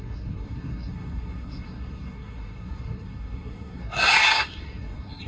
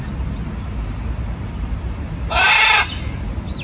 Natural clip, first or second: second